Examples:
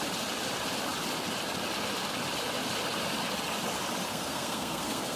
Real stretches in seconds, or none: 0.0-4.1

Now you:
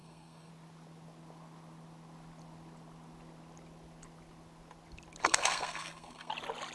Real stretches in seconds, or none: 0.5-5.2; 6.3-6.7

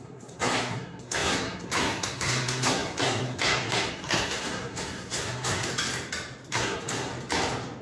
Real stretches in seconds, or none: 5.7-6.5; 7.1-7.8

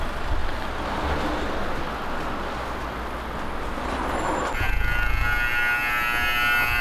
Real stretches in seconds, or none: 0.0-6.8

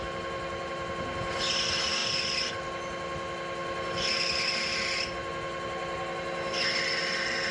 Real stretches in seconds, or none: 0.0-7.5

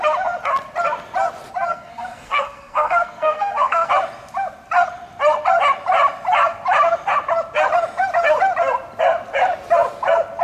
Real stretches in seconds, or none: 0.0-1.7; 3.9-10.4